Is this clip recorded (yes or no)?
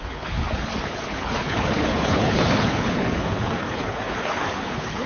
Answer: no